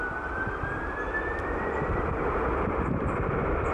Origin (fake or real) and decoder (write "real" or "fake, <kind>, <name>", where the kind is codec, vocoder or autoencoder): fake, vocoder, BigVGAN v2